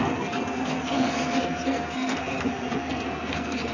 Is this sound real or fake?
fake